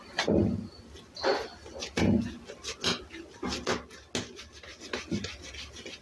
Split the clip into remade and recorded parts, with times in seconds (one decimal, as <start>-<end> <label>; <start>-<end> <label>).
0.0-6.0 recorded